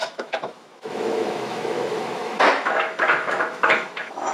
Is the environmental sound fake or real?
fake